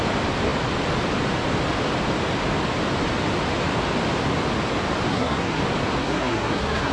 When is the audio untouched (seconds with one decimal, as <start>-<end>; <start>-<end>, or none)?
0.0-5.1; 5.6-6.0